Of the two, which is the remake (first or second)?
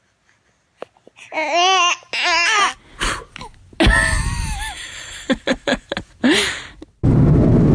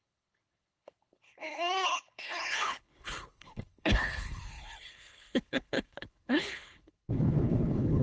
second